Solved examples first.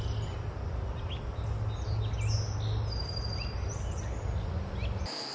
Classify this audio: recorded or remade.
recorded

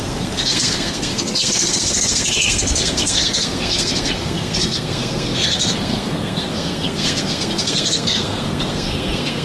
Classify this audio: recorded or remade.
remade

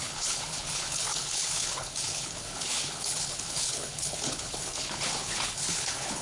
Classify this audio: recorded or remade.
remade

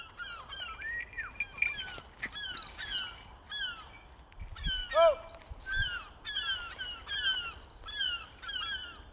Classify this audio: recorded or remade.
recorded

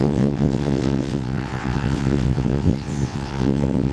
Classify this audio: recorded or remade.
remade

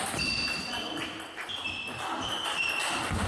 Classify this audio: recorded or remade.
recorded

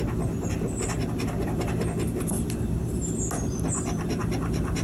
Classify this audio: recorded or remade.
recorded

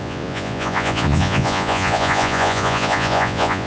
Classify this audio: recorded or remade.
remade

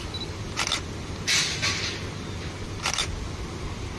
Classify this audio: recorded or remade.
recorded